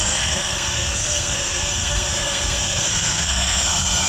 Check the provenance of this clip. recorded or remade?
remade